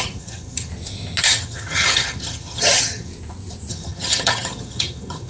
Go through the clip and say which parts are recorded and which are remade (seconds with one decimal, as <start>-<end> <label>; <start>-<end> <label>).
0.0-0.7 remade; 0.7-1.2 recorded; 1.2-3.1 remade; 3.1-3.7 recorded; 3.7-5.3 remade

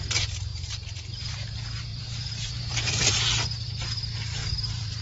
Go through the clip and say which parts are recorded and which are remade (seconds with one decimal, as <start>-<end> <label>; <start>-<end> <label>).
0.0-0.5 recorded; 0.5-1.2 remade; 1.2-1.9 recorded; 1.9-3.1 remade; 3.1-4.4 recorded; 4.4-5.0 remade